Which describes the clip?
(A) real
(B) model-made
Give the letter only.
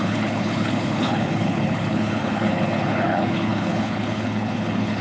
B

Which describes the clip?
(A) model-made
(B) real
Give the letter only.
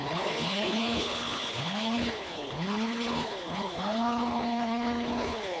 A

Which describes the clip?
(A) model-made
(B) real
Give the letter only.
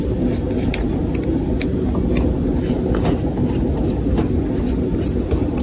B